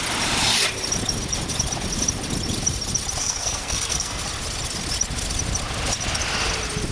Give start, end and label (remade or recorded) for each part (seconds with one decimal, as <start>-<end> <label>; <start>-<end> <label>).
0.0-3.2 recorded; 3.2-4.2 remade; 4.2-6.9 recorded

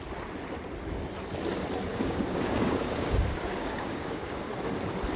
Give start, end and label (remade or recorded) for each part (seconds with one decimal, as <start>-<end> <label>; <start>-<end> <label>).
0.0-1.9 recorded; 1.9-4.5 remade; 4.5-5.2 recorded

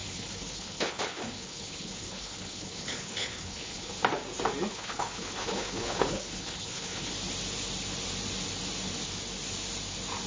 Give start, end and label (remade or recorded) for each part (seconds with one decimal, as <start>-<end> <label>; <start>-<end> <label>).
0.0-3.9 remade; 3.9-4.7 recorded; 4.7-7.1 remade; 7.1-10.3 recorded